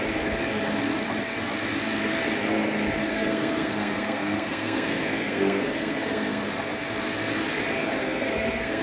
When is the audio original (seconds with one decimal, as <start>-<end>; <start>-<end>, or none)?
0.0-3.1; 6.4-8.0